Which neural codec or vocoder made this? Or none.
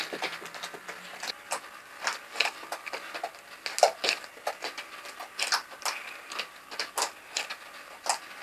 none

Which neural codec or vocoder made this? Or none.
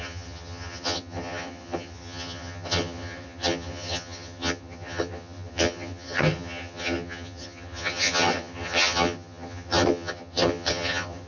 vocoder, HiFi-GAN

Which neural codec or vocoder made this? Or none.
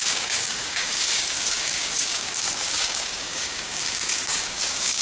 codec, DAC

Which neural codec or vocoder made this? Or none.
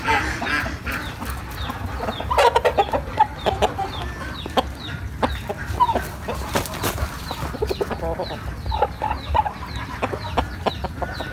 none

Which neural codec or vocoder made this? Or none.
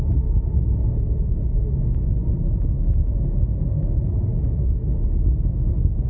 none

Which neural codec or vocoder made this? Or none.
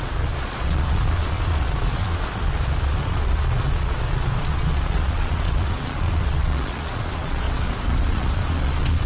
vocoder, Vocos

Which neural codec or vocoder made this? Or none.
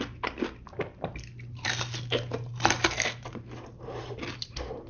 none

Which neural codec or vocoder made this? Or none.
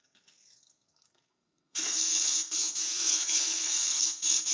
codec, SNAC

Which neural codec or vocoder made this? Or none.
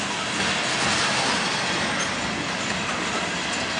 none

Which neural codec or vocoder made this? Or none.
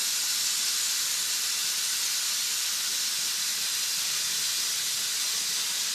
none